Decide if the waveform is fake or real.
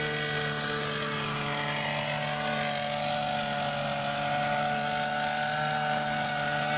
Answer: real